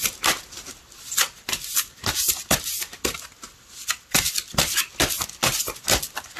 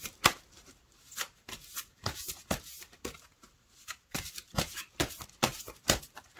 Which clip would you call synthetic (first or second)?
second